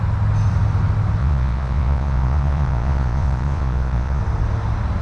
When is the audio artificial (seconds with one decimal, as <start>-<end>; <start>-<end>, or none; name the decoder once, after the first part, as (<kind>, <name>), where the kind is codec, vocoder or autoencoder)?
1.2-4.2 (vocoder, Vocos)